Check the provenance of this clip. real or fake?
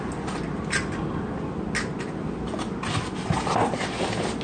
real